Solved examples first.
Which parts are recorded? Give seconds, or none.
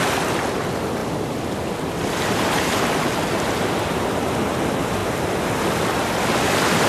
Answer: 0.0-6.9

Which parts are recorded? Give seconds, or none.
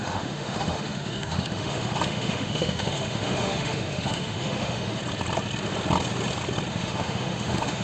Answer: 5.0-6.7